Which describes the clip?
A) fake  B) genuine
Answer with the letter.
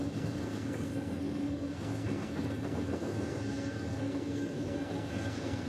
A